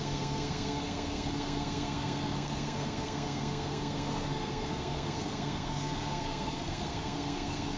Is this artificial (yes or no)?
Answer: yes